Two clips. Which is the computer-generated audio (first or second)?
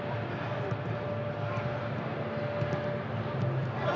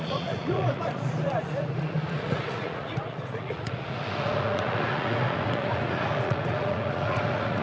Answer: second